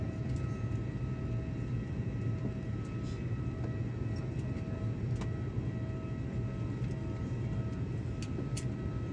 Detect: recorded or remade recorded